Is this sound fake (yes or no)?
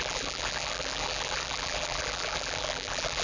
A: yes